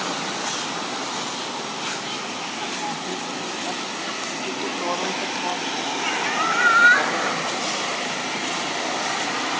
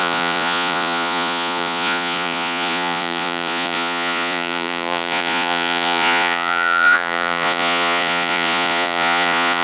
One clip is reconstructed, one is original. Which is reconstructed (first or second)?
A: second